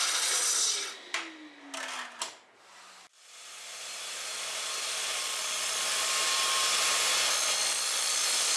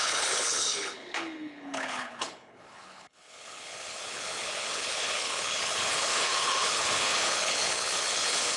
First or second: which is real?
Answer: first